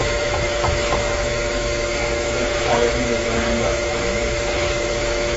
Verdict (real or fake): fake